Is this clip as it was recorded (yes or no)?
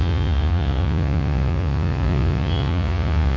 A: no